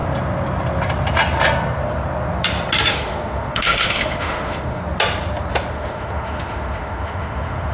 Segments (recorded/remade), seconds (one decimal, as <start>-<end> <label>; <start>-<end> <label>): 0.0-2.9 recorded; 2.9-4.8 remade; 4.8-5.7 recorded; 5.7-7.7 remade